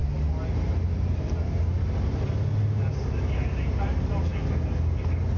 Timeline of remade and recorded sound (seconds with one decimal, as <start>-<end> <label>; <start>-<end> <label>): 0.0-5.4 recorded